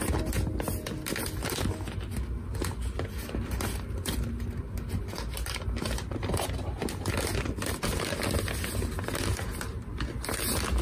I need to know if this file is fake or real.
real